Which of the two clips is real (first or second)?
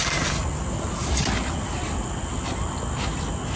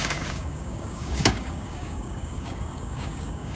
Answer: first